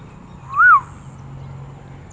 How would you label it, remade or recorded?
recorded